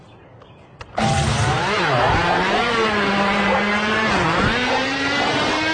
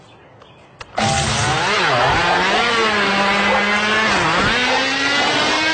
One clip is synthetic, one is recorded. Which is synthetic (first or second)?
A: first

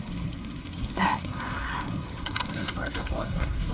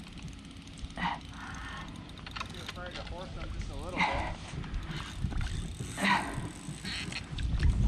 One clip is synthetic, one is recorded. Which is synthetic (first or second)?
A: first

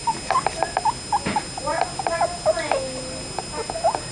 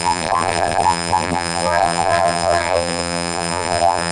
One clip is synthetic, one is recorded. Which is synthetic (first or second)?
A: second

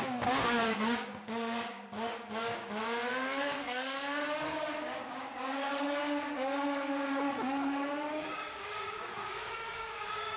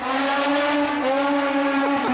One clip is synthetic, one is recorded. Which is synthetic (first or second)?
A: first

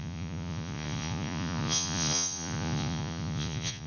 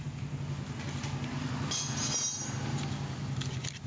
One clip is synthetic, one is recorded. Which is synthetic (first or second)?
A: first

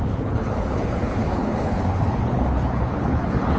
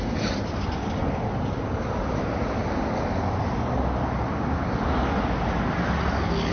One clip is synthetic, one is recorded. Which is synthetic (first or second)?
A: first